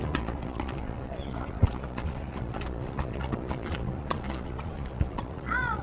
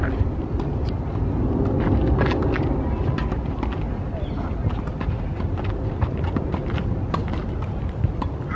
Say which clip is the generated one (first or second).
first